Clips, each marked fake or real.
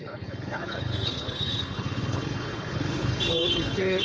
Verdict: fake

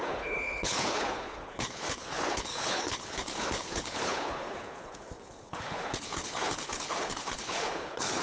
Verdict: fake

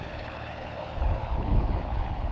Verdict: fake